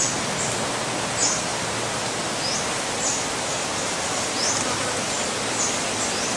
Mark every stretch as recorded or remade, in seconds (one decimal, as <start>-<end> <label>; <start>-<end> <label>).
0.0-1.5 recorded; 1.5-5.3 remade; 5.3-6.4 recorded